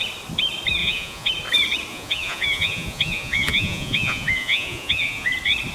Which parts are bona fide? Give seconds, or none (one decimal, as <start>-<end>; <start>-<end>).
0.0-0.8; 1.3-1.9; 5.3-5.7